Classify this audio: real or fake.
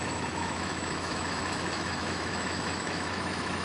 fake